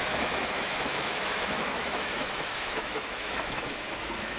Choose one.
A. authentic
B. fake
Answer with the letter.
B